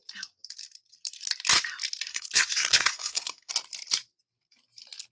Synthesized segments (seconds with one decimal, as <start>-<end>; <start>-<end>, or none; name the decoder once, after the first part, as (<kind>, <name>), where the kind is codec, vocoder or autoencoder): 2.1-3.5 (codec, SNAC)